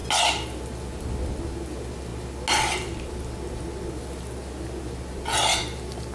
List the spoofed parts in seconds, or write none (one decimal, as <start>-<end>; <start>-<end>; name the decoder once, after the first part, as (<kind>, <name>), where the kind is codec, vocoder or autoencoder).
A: none